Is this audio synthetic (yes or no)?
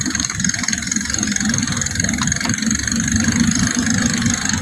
no